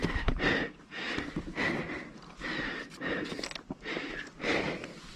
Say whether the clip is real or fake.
fake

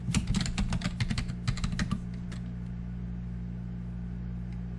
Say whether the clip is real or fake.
real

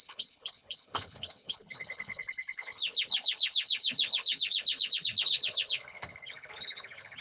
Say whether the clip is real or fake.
fake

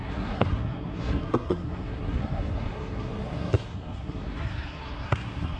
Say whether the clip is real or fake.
fake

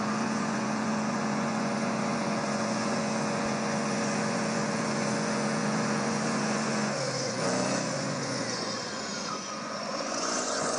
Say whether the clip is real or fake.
fake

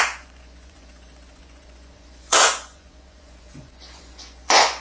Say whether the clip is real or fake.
fake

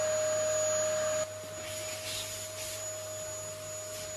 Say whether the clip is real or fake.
real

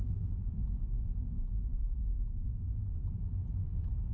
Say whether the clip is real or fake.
fake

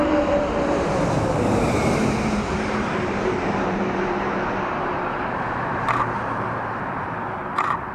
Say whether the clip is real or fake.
fake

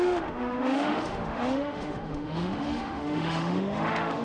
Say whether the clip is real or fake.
fake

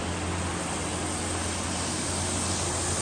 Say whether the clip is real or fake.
real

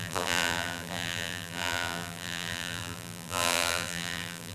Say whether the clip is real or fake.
fake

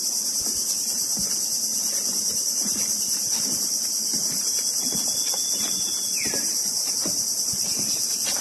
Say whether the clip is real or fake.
fake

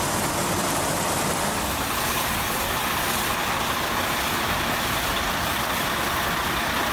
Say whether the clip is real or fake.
real